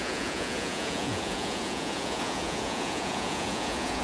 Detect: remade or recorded remade